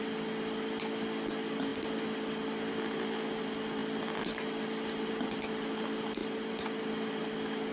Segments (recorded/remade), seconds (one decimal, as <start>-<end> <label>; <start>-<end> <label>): 0.0-7.7 recorded